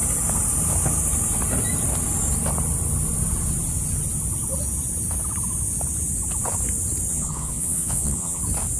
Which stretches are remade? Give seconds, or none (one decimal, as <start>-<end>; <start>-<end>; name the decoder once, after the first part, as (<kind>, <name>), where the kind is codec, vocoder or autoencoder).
7.1-8.4 (vocoder, Vocos)